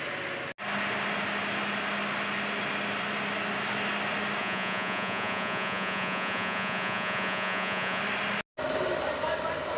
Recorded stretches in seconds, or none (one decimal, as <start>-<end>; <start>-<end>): 0.0-4.4; 8.0-9.8